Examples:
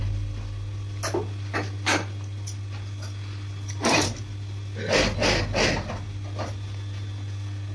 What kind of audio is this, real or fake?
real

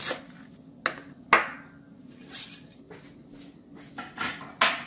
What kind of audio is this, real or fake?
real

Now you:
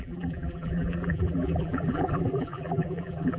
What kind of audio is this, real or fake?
fake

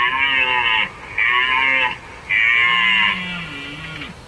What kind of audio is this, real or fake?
real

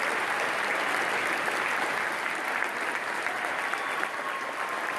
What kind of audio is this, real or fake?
real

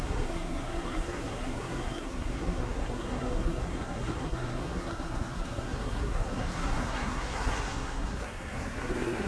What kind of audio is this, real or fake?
fake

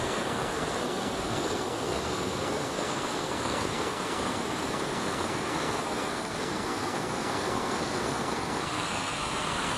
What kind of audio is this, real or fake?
fake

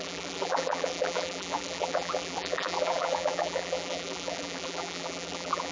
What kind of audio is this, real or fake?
fake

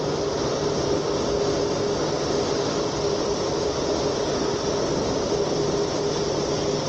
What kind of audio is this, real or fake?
real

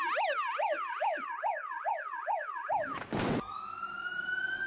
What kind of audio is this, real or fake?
real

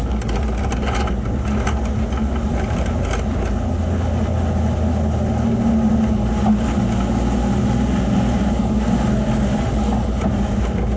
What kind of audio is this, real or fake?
real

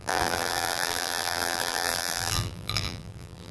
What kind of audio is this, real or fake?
fake